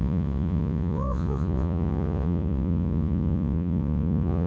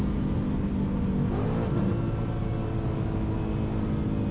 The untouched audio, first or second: second